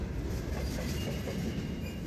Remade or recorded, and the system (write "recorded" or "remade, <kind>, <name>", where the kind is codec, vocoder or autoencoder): remade, vocoder, BigVGAN v2